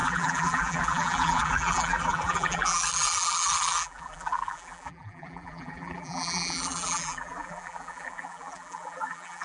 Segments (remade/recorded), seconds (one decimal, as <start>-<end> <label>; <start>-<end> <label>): 0.0-9.4 remade